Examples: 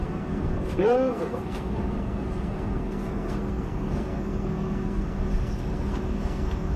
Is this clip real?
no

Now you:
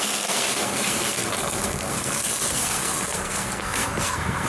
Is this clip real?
no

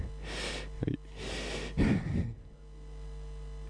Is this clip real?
yes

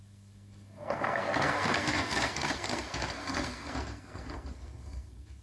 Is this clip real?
no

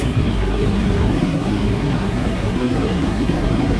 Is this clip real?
no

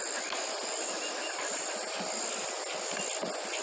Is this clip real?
yes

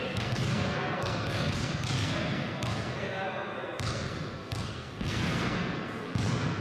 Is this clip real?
no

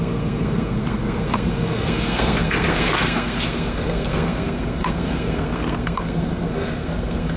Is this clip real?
no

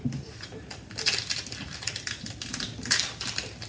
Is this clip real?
yes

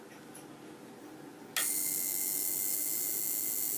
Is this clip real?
yes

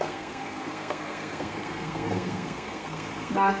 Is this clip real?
no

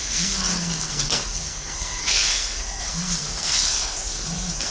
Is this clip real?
no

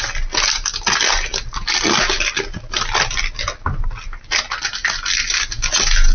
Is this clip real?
yes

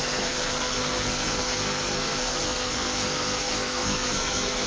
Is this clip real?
no